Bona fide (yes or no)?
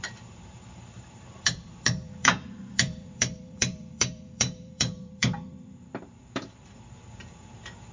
no